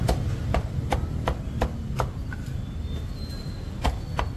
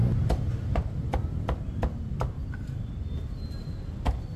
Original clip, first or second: first